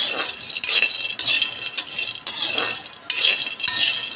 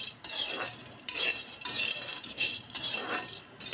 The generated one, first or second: second